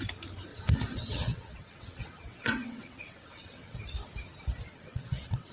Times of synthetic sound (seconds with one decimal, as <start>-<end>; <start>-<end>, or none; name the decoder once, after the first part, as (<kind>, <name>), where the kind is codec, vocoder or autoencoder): 0.5-3.8 (vocoder, WaveNeXt); 4.7-5.5